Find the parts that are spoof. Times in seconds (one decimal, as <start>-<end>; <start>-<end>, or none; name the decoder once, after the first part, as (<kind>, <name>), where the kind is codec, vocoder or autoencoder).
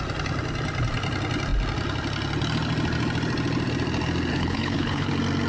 4.3-5.1 (codec, HILCodec)